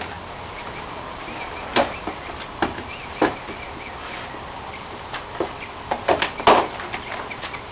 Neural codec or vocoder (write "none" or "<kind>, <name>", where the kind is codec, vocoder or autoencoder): none